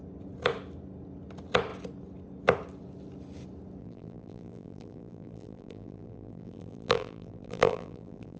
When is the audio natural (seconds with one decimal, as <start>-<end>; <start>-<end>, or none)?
0.0-3.8